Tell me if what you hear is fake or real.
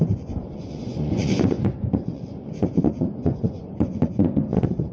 fake